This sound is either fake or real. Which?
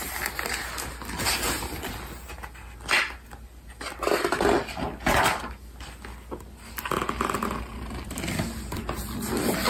real